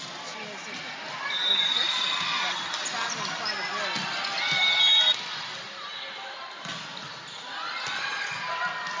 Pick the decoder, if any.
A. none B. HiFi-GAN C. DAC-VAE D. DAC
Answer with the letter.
A